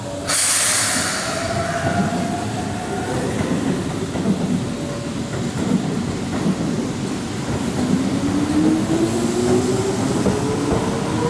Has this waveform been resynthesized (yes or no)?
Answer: no